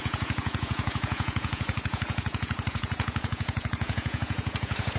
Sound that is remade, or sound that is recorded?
remade